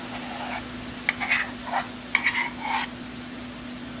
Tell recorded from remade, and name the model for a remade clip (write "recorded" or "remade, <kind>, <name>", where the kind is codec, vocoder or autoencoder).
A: recorded